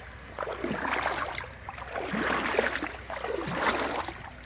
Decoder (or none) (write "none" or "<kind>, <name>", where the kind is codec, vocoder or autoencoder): none